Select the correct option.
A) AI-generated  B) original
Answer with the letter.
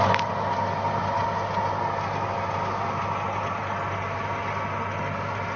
B